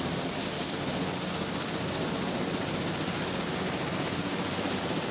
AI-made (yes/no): no